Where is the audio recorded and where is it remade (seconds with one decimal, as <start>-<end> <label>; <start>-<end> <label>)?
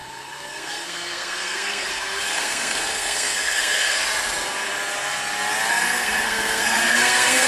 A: 0.0-4.0 remade; 4.0-5.7 recorded; 5.7-7.5 remade